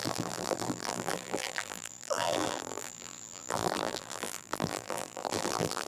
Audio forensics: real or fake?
fake